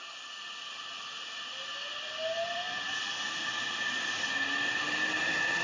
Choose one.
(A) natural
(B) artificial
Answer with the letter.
A